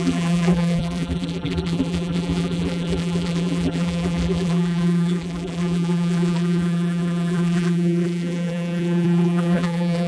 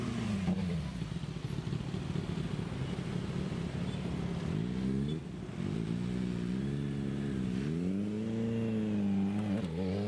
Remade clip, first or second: first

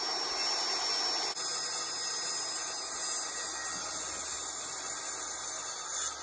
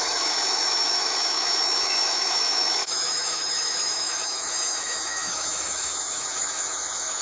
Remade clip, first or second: second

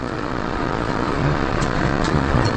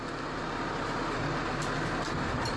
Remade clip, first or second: first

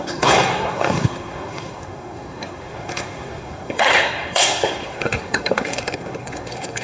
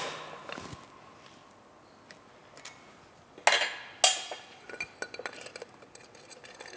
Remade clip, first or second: first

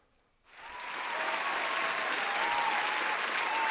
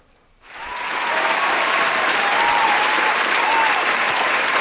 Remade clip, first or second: second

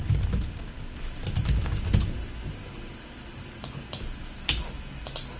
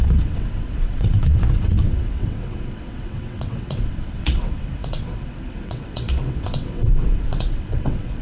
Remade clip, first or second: second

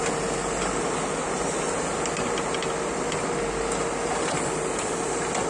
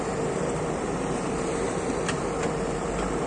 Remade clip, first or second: second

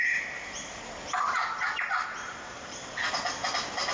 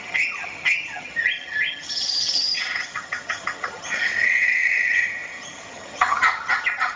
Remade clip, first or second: second